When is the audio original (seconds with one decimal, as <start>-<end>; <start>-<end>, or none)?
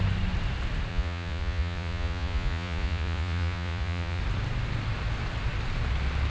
0.0-0.9; 4.2-6.3